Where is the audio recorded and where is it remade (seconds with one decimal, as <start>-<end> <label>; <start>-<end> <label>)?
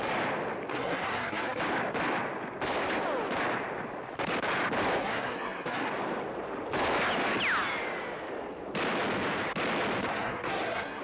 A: 0.0-0.7 recorded; 0.7-1.6 remade; 1.6-5.0 recorded; 5.0-5.9 remade; 5.9-10.1 recorded; 10.1-11.0 remade